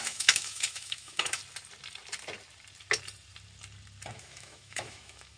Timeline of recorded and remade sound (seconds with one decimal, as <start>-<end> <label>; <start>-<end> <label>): 0.0-1.4 remade; 1.4-4.1 recorded; 4.1-5.4 remade